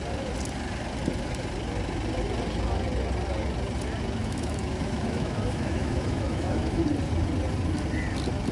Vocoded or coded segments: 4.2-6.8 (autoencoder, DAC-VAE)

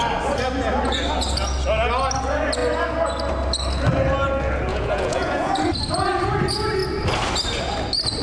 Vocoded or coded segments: 4.7-5.5 (vocoder, Vocos)

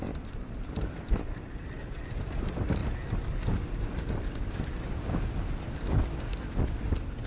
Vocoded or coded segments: 0.0-2.8 (vocoder, BigVGAN v2)

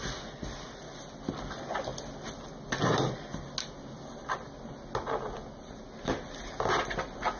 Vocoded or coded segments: none